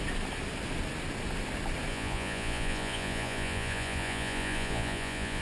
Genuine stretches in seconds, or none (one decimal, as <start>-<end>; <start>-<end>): 0.0-1.9

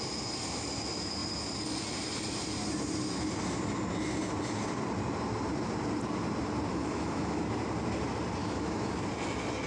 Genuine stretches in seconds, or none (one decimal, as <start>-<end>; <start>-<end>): 0.0-6.7; 7.4-8.4; 8.9-9.7

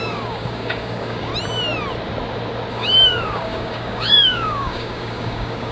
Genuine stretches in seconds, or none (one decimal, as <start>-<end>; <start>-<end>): 1.3-2.7